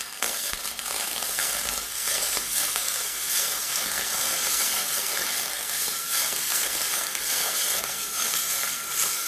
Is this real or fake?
fake